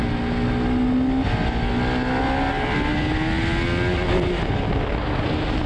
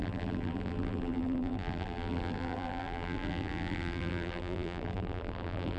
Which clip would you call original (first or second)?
first